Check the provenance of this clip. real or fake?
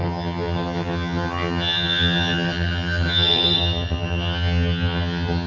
fake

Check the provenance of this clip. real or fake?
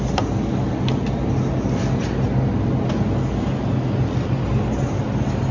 real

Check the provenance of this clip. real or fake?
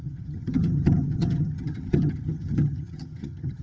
fake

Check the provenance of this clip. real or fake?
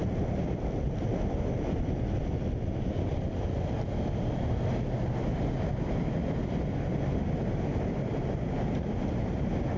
real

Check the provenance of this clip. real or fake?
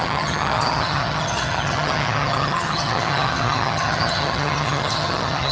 fake